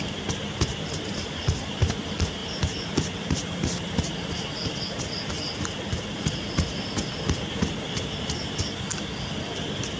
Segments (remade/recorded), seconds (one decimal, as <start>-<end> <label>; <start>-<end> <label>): 0.0-10.0 recorded